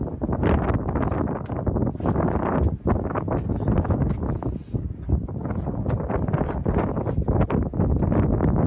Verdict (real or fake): real